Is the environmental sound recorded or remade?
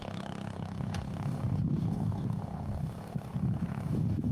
remade